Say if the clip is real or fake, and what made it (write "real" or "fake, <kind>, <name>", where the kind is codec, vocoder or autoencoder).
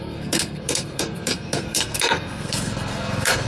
fake, codec, SNAC